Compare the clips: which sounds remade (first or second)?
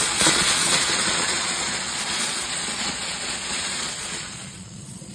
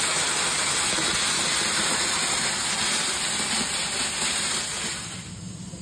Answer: first